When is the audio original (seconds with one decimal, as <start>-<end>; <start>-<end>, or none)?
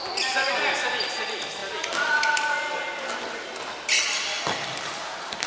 0.0-5.5